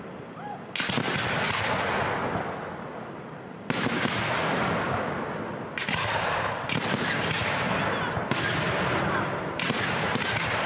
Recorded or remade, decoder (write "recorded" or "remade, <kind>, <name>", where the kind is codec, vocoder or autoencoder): recorded